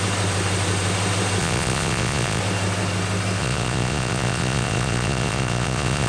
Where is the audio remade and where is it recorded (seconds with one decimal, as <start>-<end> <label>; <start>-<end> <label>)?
0.0-1.4 recorded; 1.4-2.4 remade; 2.4-3.4 recorded; 3.4-6.1 remade